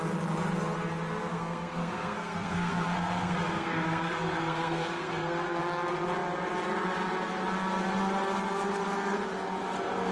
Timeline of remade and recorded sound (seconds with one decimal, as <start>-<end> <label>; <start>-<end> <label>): 0.0-1.3 recorded; 1.3-5.6 remade; 5.6-10.1 recorded